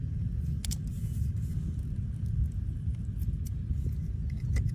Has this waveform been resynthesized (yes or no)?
no